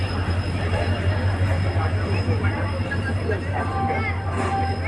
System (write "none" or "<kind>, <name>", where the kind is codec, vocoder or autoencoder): none